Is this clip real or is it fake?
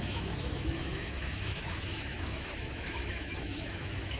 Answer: fake